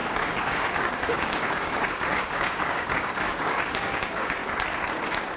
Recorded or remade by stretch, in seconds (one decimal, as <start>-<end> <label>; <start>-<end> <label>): 0.0-4.4 remade; 4.4-5.4 recorded